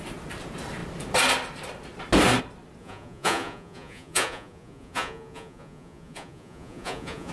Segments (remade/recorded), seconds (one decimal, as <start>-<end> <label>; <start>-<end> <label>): 0.0-2.8 recorded; 2.8-7.3 remade